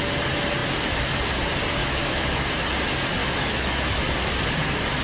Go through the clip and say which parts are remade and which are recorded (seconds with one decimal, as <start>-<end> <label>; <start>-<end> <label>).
0.0-1.8 recorded; 1.8-2.5 remade; 2.5-3.2 recorded; 3.2-4.0 remade; 4.0-5.0 recorded